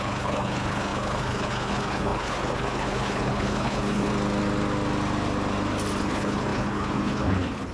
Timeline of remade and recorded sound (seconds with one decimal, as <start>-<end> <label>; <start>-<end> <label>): 0.0-4.1 remade; 4.1-6.0 recorded; 6.0-7.7 remade